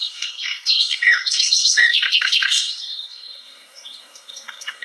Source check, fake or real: fake